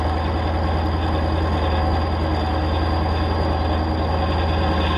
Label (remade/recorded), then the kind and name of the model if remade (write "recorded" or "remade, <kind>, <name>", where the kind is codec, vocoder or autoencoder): recorded